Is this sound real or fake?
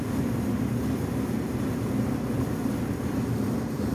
fake